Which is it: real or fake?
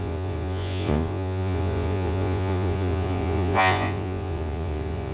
fake